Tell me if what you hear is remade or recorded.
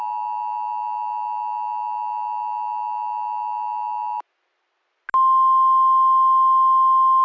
recorded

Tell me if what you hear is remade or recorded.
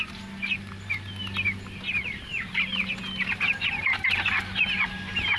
recorded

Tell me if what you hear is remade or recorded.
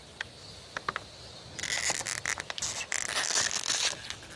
recorded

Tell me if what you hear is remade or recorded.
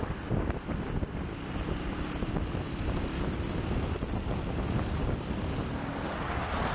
recorded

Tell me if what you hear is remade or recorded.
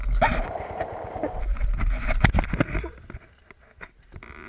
recorded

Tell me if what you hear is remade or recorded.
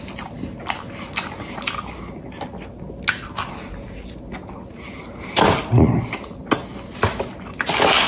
recorded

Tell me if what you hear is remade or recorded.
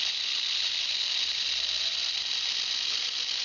recorded